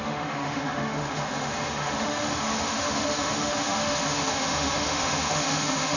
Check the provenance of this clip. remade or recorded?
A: remade